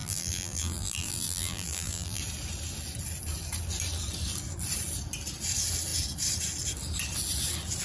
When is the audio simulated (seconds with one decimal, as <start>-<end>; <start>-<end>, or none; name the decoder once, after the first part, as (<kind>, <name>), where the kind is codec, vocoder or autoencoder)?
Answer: 0.0-2.2 (vocoder, BigVGAN v2)